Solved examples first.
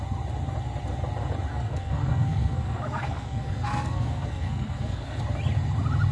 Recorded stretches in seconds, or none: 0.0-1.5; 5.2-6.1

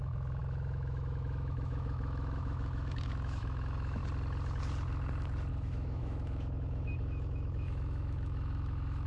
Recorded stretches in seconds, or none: 4.0-5.5

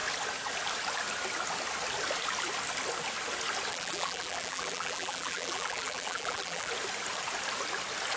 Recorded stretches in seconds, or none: 0.0-3.7; 6.7-8.2

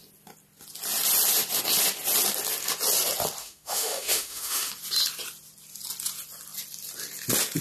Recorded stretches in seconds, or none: 0.0-3.4; 4.7-7.6

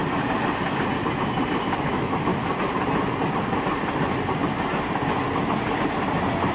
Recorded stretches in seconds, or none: 0.0-1.6; 2.3-6.5